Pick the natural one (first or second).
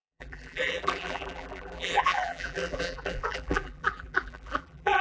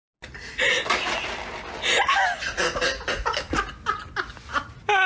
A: second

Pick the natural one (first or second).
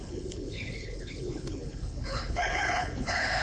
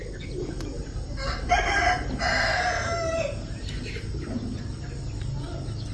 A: second